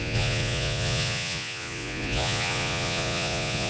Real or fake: fake